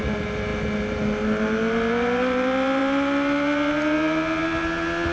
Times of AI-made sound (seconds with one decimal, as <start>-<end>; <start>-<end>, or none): none